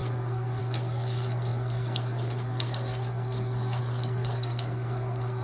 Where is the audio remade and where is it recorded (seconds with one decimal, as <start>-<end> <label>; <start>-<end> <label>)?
0.0-5.4 remade